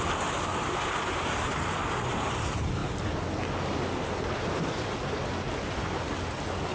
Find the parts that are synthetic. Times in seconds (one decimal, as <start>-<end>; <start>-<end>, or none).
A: none

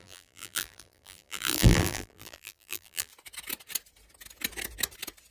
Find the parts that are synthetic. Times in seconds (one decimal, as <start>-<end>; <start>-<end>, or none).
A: 0.0-3.1

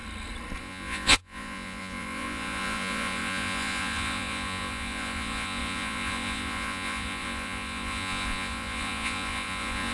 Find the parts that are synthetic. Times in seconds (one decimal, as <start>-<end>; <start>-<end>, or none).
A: 0.6-9.9

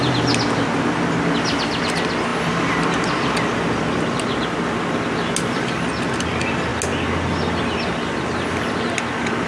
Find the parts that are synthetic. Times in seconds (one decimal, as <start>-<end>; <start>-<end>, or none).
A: none

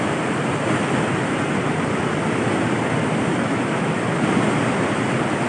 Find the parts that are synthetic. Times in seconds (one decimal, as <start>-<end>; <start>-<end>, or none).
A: 3.3-3.9

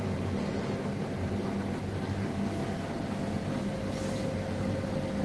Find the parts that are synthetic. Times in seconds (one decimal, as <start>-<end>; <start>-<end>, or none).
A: none

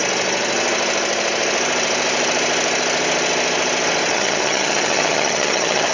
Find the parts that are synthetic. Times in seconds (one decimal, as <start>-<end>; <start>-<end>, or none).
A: 4.1-5.9

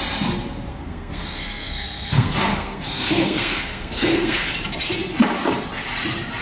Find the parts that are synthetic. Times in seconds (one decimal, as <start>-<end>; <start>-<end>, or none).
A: 0.7-4.5